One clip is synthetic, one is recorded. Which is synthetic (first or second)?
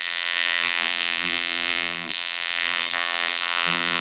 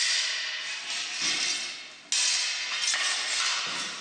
first